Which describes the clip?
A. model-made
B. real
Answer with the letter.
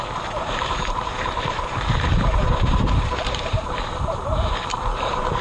A